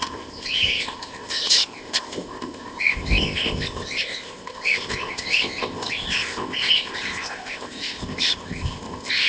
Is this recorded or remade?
remade